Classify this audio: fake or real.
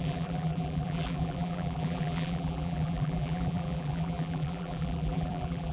fake